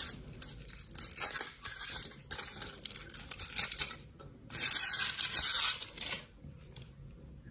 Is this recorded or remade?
recorded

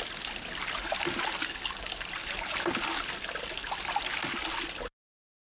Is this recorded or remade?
recorded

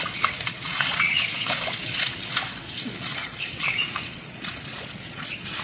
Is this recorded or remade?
remade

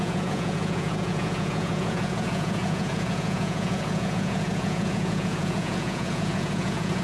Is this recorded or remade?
remade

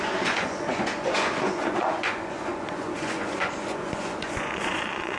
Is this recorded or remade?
remade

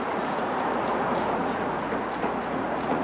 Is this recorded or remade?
remade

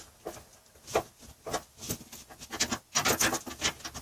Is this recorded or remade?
recorded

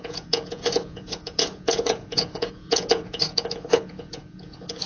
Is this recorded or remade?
remade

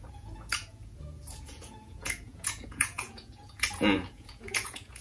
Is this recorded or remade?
remade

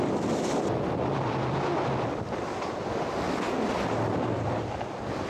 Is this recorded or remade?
recorded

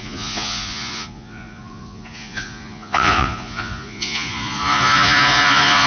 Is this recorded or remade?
remade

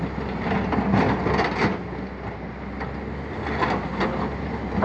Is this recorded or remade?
recorded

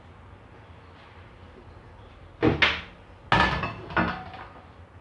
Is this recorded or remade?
recorded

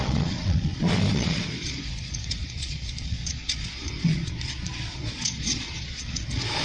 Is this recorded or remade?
remade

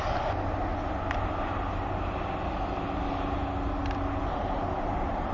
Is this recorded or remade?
recorded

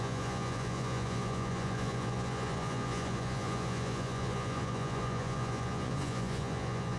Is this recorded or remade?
remade